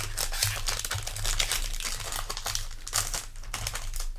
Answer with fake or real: real